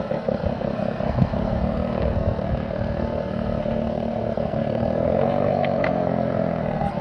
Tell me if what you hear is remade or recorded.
remade